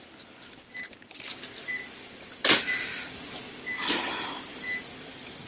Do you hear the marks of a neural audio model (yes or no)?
no